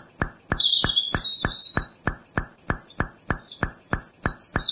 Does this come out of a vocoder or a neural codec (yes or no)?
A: no